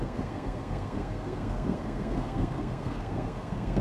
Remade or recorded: remade